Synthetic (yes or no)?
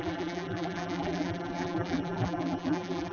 yes